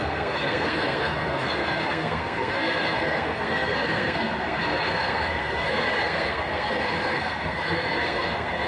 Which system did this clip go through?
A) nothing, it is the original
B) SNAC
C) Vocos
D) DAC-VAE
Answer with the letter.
B